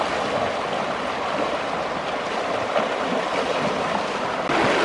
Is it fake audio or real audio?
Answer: real